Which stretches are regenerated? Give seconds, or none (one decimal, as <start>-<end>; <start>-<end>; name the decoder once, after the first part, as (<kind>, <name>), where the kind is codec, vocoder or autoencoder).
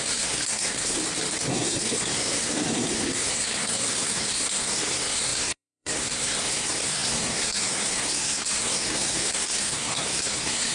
0.0-1.0 (codec, SNAC); 1.5-10.7